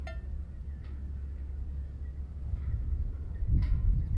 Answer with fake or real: real